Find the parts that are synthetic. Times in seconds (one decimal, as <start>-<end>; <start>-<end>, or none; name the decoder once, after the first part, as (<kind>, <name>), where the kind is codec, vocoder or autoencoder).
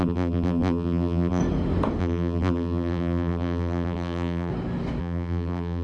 0.0-1.4 (vocoder, BigVGAN v2); 2.0-4.5; 5.0-5.8